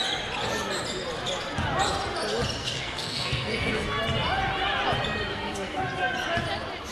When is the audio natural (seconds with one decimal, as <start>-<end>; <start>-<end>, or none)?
0.0-2.6; 4.0-5.3; 5.8-6.9